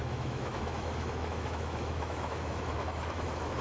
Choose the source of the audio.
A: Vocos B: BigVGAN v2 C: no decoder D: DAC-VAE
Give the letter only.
D